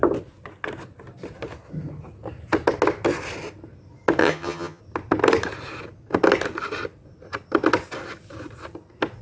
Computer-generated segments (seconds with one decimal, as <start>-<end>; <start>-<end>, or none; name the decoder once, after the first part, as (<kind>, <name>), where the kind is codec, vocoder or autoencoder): 4.2-4.8 (vocoder, HiFi-GAN)